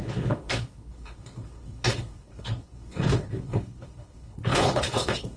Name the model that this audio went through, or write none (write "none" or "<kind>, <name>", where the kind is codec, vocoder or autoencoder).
codec, HILCodec